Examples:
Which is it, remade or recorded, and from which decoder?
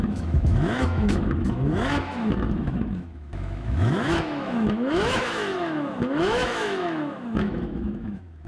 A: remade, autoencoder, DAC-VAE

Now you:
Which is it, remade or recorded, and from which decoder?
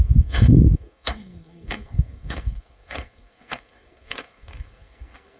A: remade, codec, SNAC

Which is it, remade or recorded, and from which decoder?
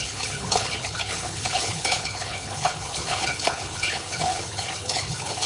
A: remade, codec, HILCodec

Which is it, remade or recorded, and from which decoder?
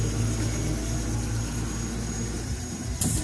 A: recorded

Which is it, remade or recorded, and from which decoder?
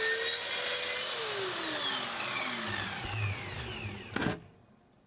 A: recorded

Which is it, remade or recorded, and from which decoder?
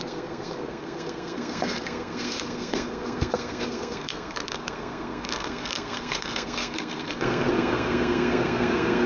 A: remade, codec, SNAC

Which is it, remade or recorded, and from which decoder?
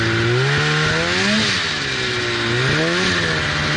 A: recorded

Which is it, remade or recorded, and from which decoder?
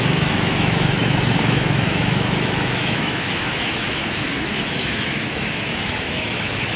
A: remade, autoencoder, DAC-VAE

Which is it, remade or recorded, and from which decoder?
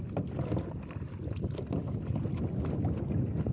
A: recorded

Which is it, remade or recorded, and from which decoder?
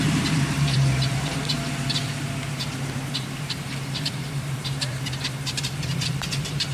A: remade, vocoder, BigVGAN v2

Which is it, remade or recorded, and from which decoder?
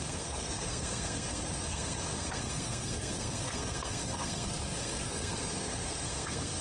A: remade, codec, SNAC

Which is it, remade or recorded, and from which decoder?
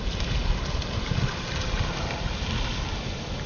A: recorded